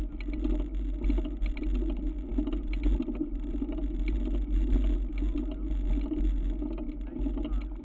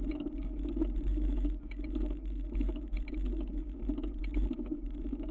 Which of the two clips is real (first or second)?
first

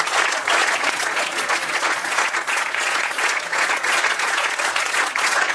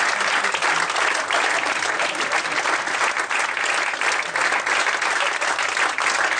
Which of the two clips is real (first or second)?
second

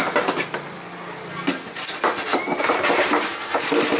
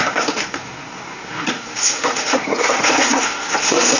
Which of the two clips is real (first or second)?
first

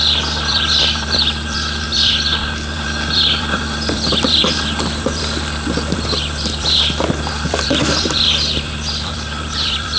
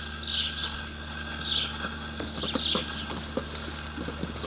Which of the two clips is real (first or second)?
second